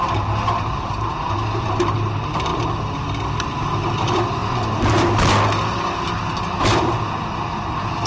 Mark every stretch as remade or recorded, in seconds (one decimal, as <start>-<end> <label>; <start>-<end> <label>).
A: 0.0-2.5 remade; 2.5-4.0 recorded; 4.0-4.4 remade; 4.4-6.5 recorded; 6.5-8.1 remade